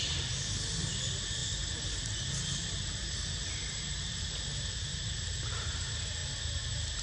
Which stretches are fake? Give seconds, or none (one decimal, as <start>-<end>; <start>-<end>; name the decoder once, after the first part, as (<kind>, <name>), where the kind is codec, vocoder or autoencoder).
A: 0.0-6.2 (vocoder, BigVGAN v2)